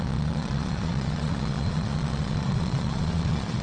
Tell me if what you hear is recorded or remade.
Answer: remade